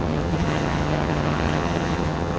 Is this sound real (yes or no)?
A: no